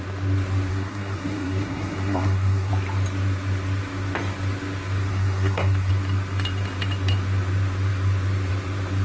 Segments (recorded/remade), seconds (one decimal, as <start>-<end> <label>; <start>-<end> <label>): 0.0-0.7 recorded; 0.7-2.7 remade; 2.7-5.1 recorded; 5.1-5.9 remade; 5.9-9.0 recorded